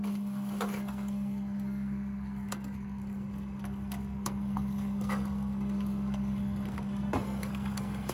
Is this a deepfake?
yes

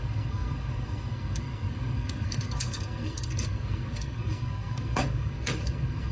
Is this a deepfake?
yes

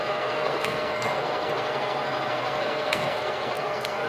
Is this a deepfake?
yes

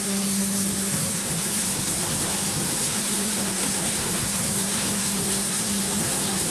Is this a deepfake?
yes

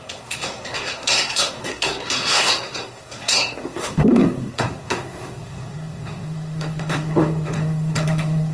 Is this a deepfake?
yes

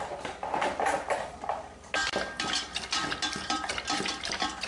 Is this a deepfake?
no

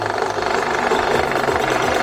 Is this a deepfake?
no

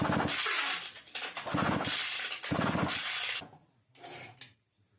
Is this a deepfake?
no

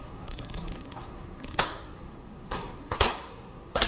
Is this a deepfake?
yes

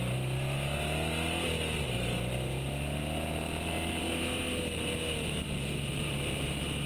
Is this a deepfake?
no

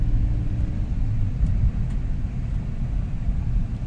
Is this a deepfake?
no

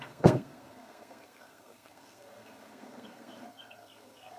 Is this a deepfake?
yes